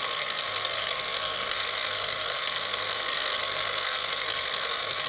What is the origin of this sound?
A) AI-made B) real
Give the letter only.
A